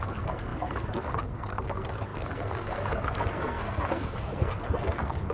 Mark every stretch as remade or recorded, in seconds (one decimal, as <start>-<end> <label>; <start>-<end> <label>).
0.0-5.3 remade